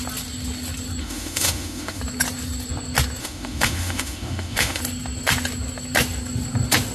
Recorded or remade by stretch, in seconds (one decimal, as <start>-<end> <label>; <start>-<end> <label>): 0.0-1.0 recorded; 1.0-2.0 remade; 2.0-3.2 recorded; 3.2-4.8 remade; 4.8-6.9 recorded